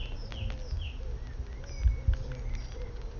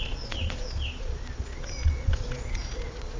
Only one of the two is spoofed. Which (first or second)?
second